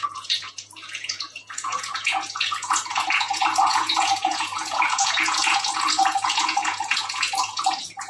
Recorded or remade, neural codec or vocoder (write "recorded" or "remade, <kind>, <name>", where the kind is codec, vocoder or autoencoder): remade, vocoder, Vocos